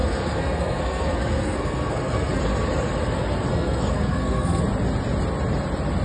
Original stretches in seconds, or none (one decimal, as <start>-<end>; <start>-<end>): 2.4-3.5; 4.6-6.0